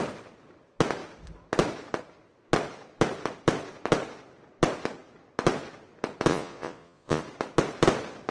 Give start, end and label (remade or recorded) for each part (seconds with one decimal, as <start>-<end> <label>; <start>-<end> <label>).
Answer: 0.0-6.3 recorded; 6.3-7.2 remade; 7.2-8.3 recorded